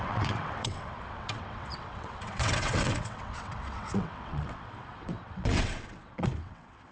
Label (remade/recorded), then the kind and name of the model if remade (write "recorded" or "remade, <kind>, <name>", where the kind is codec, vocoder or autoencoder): remade, vocoder, WaveNeXt